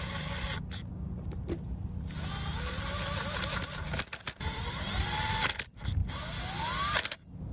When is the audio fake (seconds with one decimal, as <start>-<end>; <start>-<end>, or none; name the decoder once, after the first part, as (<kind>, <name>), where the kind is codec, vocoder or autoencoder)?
none